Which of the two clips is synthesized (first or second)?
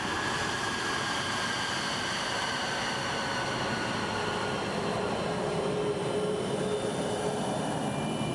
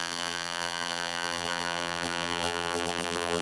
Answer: second